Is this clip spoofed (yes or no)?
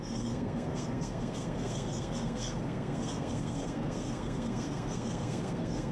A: yes